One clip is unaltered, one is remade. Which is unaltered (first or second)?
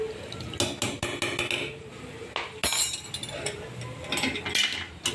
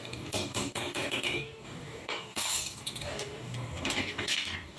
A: first